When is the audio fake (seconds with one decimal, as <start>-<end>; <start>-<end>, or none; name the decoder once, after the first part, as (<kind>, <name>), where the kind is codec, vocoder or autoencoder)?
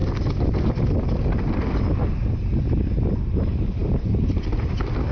none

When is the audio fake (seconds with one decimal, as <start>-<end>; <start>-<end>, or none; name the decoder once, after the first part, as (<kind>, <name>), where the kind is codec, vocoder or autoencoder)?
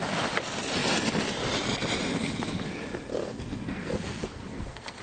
3.1-5.0 (codec, SNAC)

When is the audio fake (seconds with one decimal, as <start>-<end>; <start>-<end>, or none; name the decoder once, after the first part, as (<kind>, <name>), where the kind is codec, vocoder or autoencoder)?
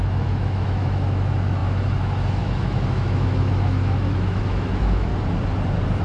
0.0-5.1 (autoencoder, DAC-VAE)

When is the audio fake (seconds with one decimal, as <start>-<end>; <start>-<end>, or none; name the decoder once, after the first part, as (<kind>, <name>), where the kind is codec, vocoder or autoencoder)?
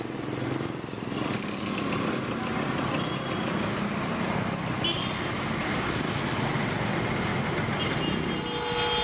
none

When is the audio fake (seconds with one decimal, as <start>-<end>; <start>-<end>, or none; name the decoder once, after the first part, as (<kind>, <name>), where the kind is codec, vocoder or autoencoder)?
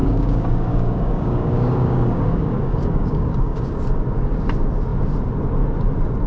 0.0-3.8 (codec, DAC)